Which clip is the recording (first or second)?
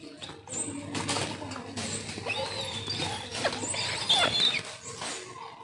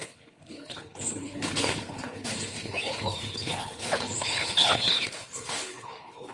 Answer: first